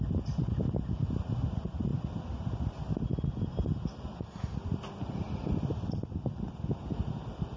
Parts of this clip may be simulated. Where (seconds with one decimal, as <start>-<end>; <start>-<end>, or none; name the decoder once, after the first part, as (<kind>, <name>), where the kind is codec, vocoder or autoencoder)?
none